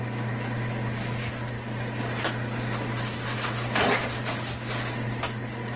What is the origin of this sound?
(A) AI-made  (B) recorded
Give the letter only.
B